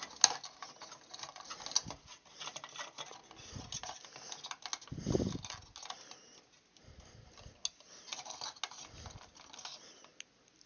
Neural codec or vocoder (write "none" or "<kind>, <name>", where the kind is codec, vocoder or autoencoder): none